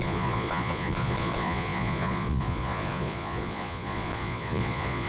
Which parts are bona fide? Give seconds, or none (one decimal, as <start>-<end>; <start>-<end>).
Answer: none